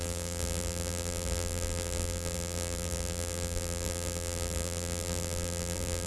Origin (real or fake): fake